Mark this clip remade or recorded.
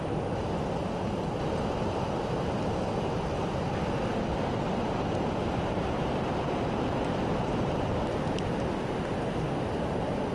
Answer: recorded